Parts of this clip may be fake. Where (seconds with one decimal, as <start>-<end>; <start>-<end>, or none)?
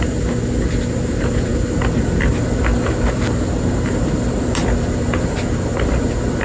none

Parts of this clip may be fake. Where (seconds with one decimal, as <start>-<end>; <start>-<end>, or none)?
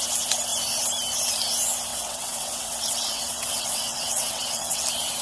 1.9-4.8